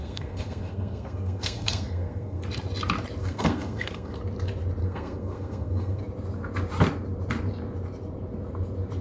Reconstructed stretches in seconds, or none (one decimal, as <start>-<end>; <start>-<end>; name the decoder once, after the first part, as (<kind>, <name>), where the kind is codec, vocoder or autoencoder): 0.0-2.4 (codec, SNAC); 3.2-4.2; 4.8-6.0